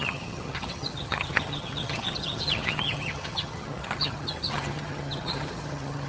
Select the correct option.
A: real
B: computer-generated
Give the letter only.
B